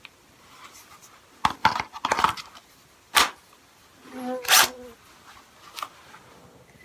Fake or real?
real